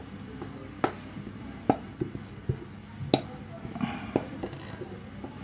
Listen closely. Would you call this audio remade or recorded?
recorded